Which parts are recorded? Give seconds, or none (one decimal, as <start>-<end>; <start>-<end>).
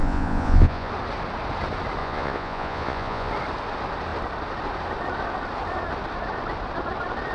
0.9-2.0; 3.3-7.3